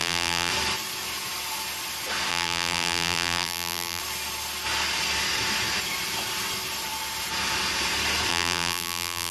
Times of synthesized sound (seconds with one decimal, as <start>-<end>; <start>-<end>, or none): 0.0-0.5; 2.3-4.0; 8.3-9.3